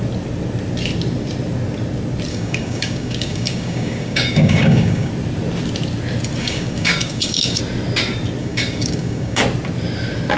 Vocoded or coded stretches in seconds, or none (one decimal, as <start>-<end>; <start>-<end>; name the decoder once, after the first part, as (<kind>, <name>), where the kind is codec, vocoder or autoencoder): 2.3-5.1 (codec, DAC); 6.4-7.6; 8.4-9.4

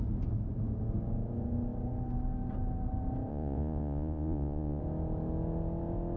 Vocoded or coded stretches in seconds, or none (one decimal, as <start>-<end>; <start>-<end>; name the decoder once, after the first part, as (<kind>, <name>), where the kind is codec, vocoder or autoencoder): 3.3-4.8 (vocoder, Vocos)

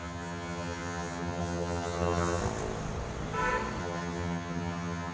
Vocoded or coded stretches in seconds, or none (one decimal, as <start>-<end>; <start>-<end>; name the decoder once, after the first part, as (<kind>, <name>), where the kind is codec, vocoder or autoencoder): 0.0-2.4 (vocoder, HiFi-GAN); 3.8-5.1

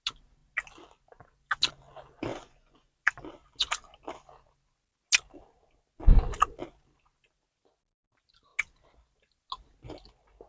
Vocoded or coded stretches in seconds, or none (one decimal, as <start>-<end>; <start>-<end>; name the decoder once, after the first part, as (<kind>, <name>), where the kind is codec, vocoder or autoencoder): 2.3-2.9 (vocoder, Vocos)

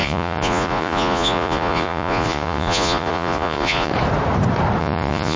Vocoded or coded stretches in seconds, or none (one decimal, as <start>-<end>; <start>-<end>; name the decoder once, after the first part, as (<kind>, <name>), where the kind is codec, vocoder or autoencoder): 0.0-3.9 (vocoder, Vocos); 4.8-5.4